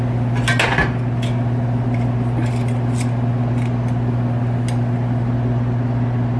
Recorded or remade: recorded